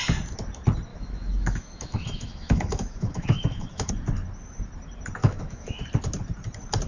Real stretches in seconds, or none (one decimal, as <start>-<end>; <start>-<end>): 0.0-0.9; 3.9-5.2; 5.8-6.9